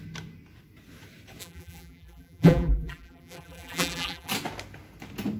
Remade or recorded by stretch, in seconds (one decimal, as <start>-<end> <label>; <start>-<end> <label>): 0.0-1.4 recorded; 1.4-4.3 remade; 4.3-5.4 recorded